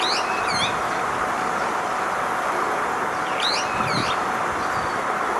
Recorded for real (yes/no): yes